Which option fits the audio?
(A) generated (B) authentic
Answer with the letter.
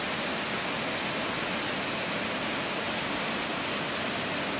B